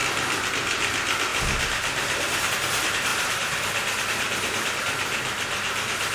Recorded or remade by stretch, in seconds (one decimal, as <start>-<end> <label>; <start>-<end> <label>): 0.0-0.5 remade; 0.5-1.3 recorded; 1.3-2.5 remade; 2.5-3.1 recorded; 3.1-4.8 remade; 4.8-6.1 recorded